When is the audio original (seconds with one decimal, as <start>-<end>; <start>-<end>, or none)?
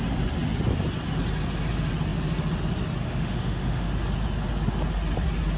0.0-3.0; 3.9-5.6